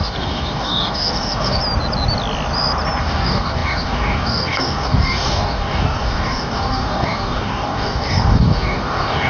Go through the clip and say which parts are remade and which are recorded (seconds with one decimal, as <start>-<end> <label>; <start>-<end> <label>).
0.0-1.6 remade; 1.6-3.0 recorded; 3.0-9.3 remade